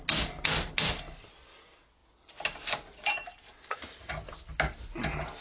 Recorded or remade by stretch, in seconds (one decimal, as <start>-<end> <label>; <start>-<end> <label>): 0.0-5.4 recorded